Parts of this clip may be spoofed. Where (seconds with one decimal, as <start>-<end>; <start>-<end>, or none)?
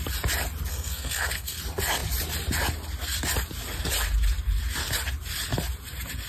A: 0.7-1.6